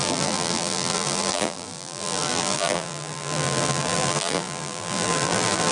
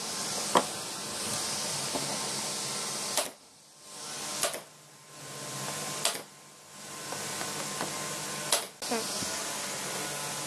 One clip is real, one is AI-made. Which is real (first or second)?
second